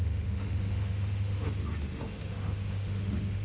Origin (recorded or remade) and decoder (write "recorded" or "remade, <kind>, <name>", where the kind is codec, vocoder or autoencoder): remade, autoencoder, DAC-VAE